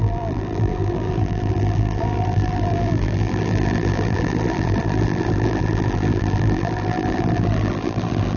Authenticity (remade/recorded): remade